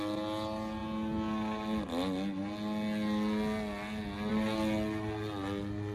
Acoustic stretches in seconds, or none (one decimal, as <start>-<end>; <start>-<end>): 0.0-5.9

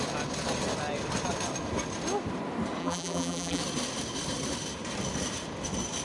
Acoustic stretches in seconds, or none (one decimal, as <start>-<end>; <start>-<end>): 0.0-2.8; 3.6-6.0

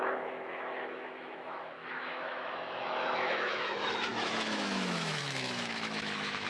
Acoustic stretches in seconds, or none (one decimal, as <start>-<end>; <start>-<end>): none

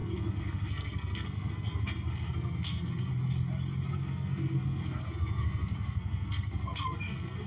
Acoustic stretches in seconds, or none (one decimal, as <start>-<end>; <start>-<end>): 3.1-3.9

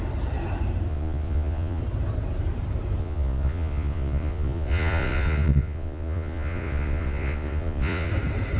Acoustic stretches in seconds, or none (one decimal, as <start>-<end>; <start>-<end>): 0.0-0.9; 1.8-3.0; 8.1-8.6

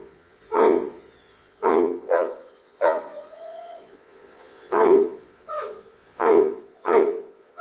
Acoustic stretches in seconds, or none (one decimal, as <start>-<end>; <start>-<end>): none

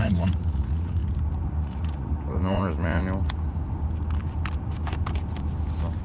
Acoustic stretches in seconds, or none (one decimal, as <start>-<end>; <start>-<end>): 1.0-1.5; 3.0-6.0

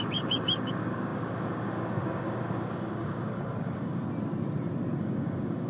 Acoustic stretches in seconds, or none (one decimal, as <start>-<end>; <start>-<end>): 4.0-5.0